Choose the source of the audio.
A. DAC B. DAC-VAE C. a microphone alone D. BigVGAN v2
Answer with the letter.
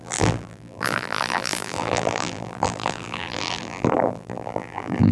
D